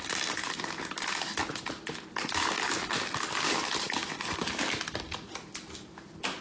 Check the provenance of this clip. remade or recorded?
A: recorded